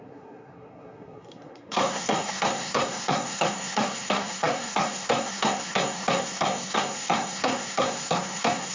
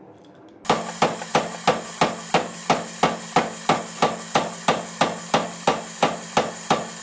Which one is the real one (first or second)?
second